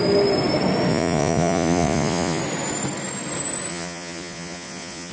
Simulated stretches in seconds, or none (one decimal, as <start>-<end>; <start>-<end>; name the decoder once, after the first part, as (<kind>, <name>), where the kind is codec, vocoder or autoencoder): 0.9-2.4 (vocoder, Vocos); 3.7-5.1